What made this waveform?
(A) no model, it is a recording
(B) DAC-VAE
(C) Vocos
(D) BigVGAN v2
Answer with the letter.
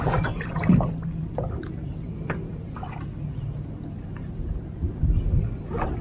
A